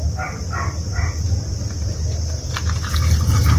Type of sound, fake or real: real